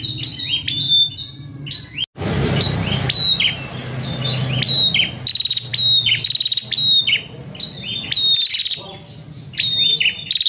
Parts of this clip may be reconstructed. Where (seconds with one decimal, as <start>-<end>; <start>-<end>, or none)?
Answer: none